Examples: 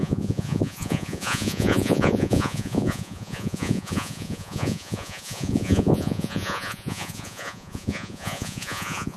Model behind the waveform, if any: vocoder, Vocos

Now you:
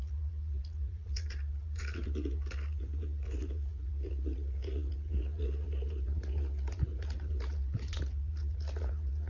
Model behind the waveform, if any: vocoder, Vocos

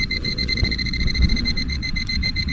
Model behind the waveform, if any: vocoder, Vocos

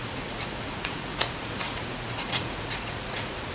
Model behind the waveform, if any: vocoder, Vocos